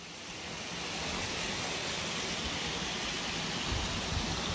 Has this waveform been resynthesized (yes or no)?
no